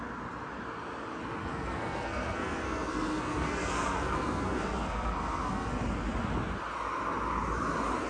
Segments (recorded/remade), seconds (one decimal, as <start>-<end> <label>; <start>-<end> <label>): 0.0-1.4 recorded; 1.4-5.8 remade; 5.8-8.1 recorded